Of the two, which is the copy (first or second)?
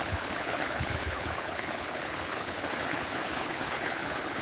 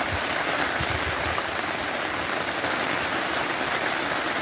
first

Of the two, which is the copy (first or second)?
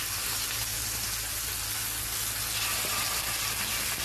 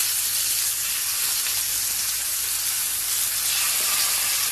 second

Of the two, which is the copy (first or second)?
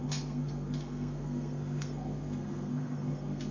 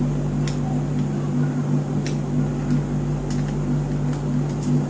first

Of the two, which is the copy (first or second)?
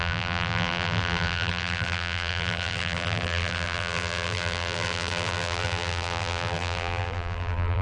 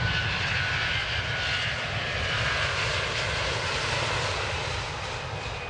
first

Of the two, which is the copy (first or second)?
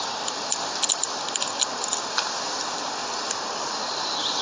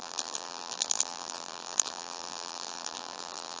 second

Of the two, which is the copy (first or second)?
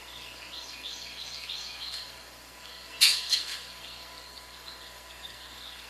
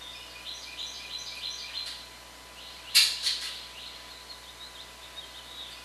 first